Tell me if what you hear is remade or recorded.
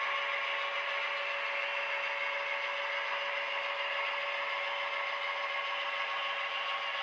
recorded